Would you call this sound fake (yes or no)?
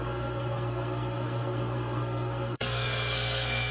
yes